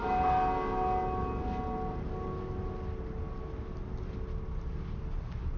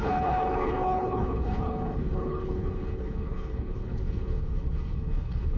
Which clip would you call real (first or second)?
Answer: first